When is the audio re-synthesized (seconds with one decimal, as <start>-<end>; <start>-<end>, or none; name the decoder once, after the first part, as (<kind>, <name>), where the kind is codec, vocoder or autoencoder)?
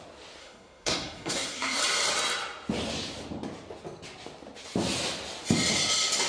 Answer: 0.4-1.8 (codec, SNAC)